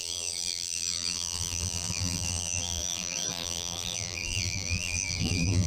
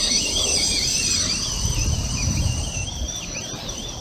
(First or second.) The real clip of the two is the second